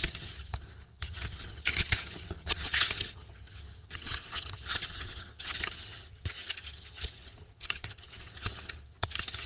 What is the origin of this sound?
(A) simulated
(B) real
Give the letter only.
A